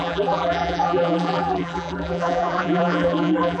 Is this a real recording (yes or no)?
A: no